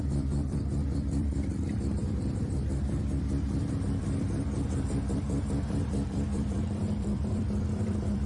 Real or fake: fake